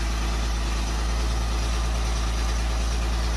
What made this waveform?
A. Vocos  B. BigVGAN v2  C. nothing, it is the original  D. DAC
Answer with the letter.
C